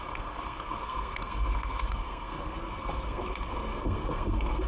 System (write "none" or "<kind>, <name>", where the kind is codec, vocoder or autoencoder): codec, SNAC